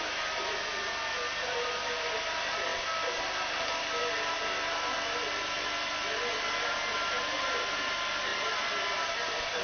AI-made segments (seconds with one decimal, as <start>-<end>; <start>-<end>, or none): 2.7-3.2; 8.3-9.6